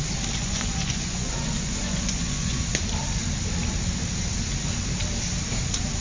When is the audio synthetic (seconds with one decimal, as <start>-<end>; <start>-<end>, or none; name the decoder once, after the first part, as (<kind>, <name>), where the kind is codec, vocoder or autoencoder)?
0.4-2.8 (vocoder, Vocos)